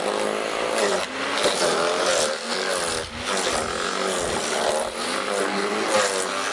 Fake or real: real